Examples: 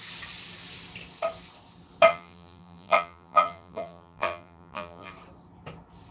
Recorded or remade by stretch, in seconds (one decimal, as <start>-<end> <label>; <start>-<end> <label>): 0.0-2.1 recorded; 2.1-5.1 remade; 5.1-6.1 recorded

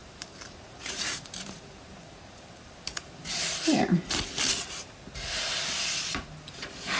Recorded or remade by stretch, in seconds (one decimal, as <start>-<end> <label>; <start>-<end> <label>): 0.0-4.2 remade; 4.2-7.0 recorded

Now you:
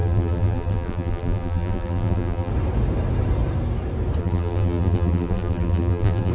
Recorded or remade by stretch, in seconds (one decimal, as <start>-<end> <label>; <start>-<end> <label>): 0.0-2.5 remade; 2.5-4.2 recorded; 4.2-6.3 remade

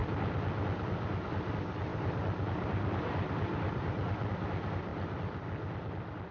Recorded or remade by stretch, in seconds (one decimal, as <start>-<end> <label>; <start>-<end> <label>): 0.0-1.9 recorded; 1.9-4.3 remade; 4.3-4.9 recorded; 4.9-5.4 remade; 5.4-6.3 recorded

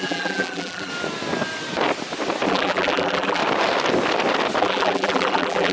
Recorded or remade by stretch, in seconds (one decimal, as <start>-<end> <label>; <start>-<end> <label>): 0.0-0.9 remade; 0.9-2.5 recorded; 2.5-3.4 remade; 3.4-4.6 recorded; 4.6-5.7 remade

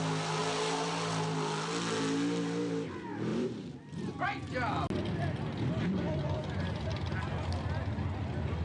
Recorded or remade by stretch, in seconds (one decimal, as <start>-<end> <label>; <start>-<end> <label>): 0.0-0.4 recorded; 0.4-0.9 remade; 0.9-3.3 recorded; 3.3-4.2 remade; 4.2-8.6 recorded